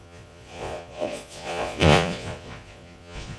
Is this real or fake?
fake